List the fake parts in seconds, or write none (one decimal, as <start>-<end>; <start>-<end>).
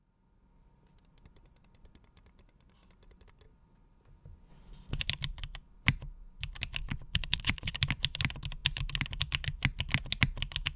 6.8-7.7